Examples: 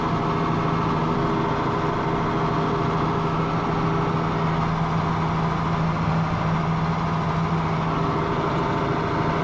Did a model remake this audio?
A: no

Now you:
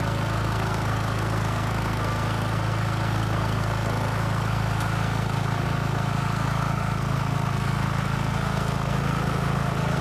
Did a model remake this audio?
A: yes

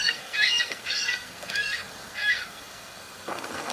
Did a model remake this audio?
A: yes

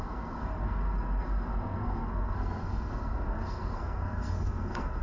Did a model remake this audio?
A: yes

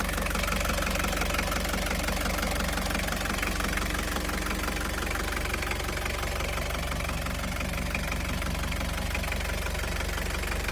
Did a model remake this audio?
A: no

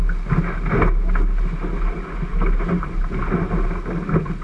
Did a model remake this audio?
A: no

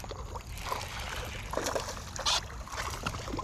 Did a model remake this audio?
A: no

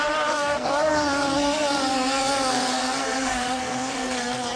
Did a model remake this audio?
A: yes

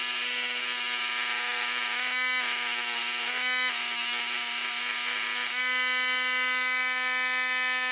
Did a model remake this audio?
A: no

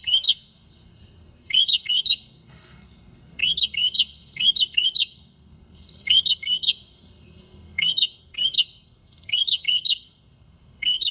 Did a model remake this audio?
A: yes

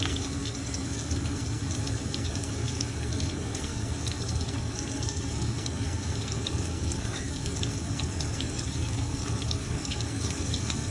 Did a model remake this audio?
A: yes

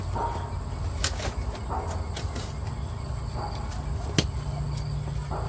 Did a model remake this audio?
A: no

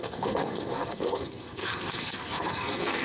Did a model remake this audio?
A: yes